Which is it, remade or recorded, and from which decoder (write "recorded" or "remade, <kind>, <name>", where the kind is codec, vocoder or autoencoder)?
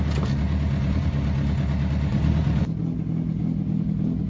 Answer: recorded